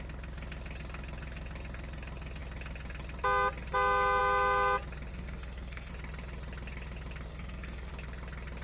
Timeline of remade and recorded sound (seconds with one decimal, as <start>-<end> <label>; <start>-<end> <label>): 0.0-5.1 recorded; 5.1-5.9 remade; 5.9-7.3 recorded; 7.3-7.9 remade; 7.9-8.6 recorded